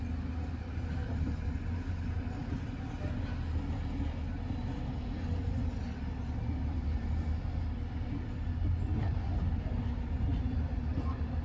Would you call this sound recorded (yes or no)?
yes